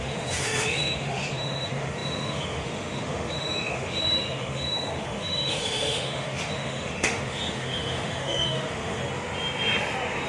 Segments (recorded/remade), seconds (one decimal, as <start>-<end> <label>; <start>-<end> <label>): 0.0-9.0 remade; 9.0-10.3 recorded